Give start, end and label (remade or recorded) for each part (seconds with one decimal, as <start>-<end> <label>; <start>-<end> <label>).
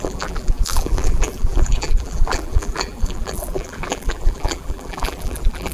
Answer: 0.0-5.7 remade